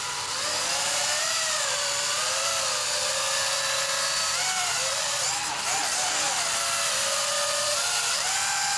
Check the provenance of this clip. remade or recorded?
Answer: remade